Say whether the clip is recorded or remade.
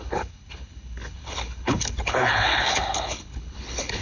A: remade